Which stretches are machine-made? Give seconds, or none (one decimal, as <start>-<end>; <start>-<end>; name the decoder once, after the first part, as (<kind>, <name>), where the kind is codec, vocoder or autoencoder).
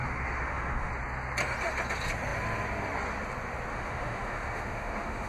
0.0-0.9 (autoencoder, DAC-VAE); 3.7-5.3